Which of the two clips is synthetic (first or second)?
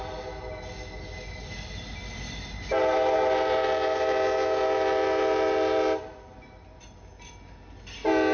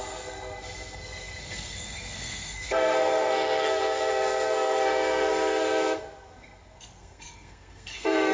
second